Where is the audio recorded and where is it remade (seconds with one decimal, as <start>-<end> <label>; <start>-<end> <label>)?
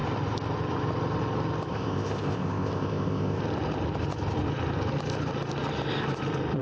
0.0-1.7 recorded; 1.7-3.4 remade; 3.4-6.6 recorded